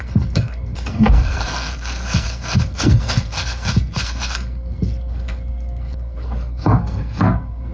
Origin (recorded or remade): remade